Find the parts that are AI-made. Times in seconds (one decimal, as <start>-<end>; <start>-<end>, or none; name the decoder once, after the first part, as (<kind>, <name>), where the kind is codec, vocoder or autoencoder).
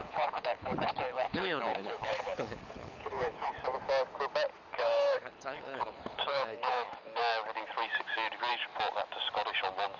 0.0-3.5 (codec, HILCodec); 4.7-7.2